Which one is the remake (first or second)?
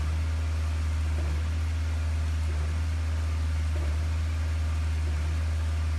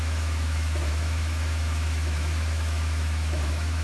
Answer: second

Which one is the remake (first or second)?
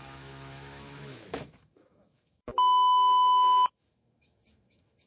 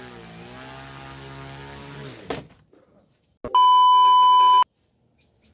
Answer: first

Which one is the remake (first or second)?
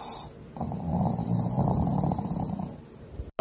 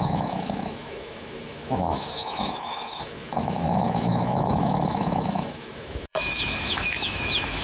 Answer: second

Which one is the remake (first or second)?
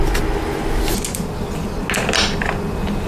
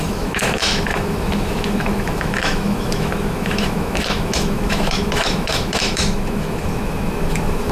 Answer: second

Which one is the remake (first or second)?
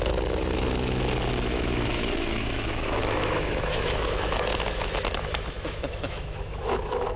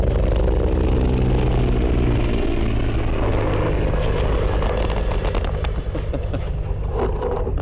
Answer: first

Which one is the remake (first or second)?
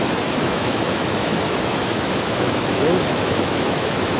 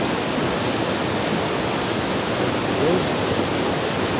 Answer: first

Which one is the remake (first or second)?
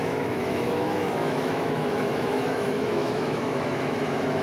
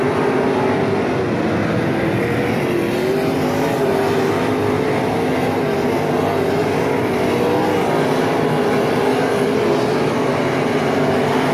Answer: first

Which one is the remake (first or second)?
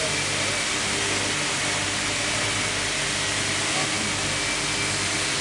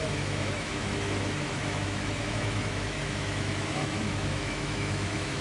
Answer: second